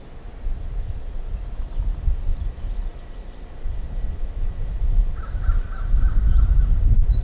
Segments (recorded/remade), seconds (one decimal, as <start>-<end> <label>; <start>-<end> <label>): 0.0-2.9 recorded; 2.9-7.2 remade